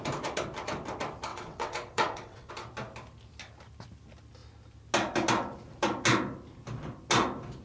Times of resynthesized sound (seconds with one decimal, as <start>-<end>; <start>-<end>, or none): 1.3-2.5